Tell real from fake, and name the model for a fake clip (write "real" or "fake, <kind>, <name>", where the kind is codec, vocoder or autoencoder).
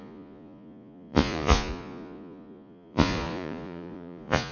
fake, vocoder, Vocos